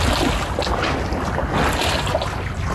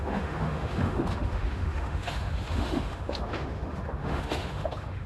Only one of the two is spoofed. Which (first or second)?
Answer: second